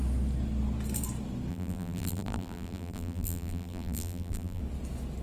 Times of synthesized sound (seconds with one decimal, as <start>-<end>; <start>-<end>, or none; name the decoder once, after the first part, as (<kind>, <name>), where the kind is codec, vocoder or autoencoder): 1.5-4.6 (vocoder, BigVGAN v2)